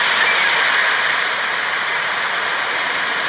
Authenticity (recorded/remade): recorded